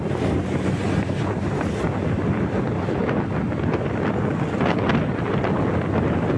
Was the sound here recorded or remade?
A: recorded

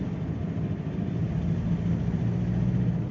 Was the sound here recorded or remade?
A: recorded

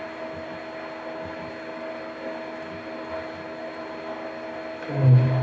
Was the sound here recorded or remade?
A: recorded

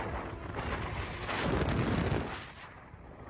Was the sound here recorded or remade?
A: recorded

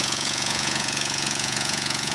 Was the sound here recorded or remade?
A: remade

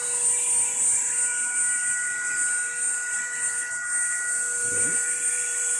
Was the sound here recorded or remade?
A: recorded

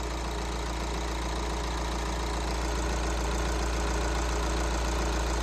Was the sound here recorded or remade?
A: recorded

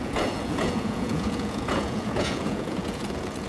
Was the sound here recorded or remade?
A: remade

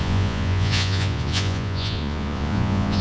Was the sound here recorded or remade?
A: remade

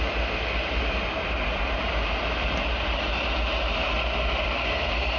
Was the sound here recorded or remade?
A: recorded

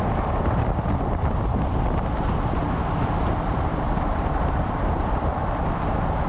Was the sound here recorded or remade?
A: recorded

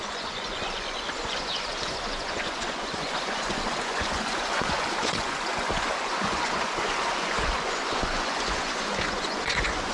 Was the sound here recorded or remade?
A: remade